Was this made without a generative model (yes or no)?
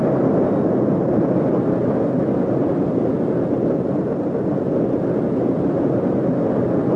yes